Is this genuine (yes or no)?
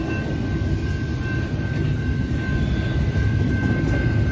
yes